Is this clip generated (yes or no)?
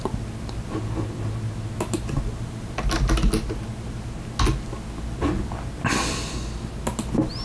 no